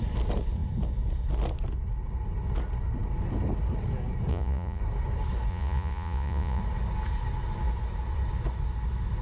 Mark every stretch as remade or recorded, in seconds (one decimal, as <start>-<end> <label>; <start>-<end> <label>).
0.0-4.3 recorded; 4.3-4.8 remade; 4.8-5.5 recorded; 5.5-6.6 remade; 6.6-9.2 recorded